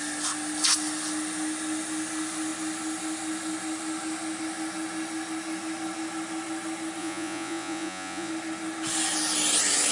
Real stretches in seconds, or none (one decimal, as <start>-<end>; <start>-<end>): 0.0-7.0; 8.3-9.9